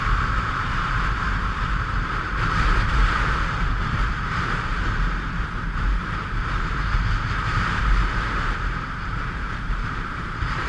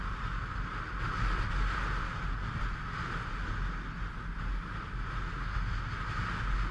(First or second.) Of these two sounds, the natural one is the second